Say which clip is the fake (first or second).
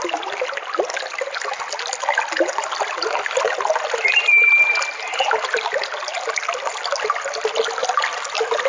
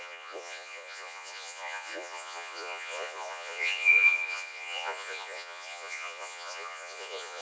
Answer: second